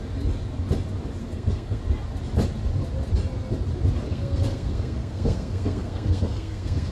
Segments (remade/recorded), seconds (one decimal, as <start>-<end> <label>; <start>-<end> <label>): 0.0-1.2 recorded; 1.2-1.8 remade; 1.8-4.1 recorded; 4.1-6.9 remade

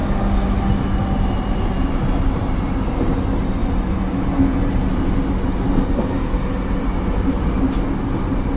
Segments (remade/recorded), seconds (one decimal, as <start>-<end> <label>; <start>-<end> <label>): 0.0-8.6 recorded

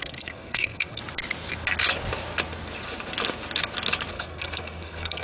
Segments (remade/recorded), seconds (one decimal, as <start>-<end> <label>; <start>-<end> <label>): 0.0-1.0 remade; 1.0-4.1 recorded; 4.1-5.2 remade